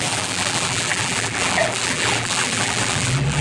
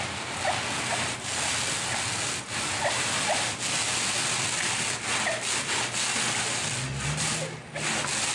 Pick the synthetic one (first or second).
first